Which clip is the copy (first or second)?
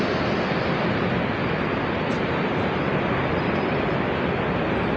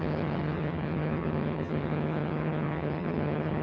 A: second